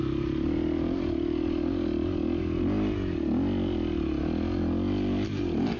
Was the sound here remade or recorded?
recorded